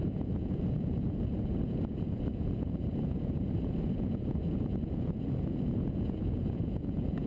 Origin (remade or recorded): remade